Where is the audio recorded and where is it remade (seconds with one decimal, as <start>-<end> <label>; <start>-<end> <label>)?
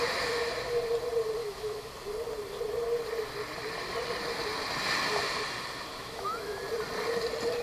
0.0-1.4 recorded; 1.4-1.9 remade; 1.9-5.9 recorded; 5.9-6.6 remade; 6.6-7.6 recorded